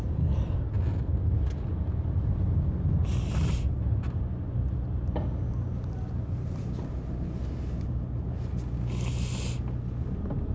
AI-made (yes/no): no